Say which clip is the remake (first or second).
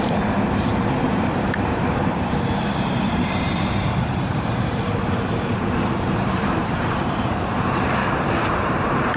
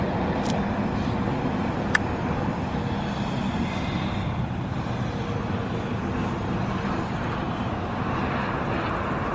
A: first